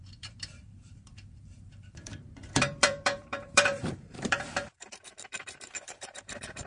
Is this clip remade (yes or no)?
yes